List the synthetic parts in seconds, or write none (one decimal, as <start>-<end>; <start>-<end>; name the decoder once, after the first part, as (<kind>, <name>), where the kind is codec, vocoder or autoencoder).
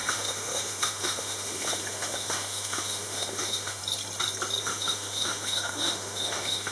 0.0-3.8 (autoencoder, DAC-VAE); 4.6-6.7